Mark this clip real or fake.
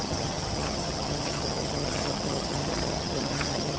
fake